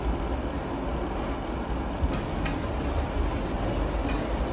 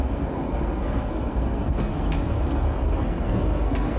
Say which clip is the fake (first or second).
second